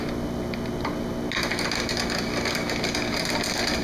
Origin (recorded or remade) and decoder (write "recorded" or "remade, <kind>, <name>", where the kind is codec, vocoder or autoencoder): recorded